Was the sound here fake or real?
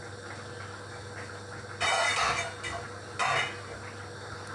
real